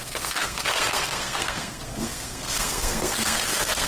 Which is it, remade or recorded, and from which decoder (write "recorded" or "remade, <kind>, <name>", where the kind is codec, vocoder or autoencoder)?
remade, codec, SNAC